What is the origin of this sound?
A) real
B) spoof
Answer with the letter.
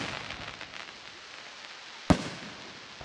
A